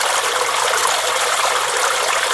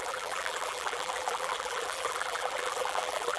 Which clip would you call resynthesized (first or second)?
second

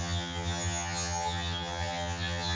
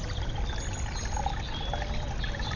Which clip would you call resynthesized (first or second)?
first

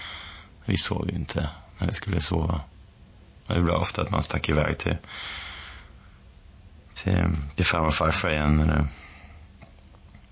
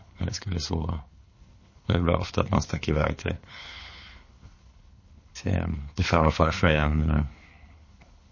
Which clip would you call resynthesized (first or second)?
second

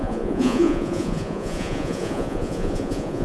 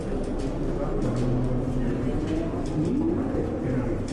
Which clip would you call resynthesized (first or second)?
first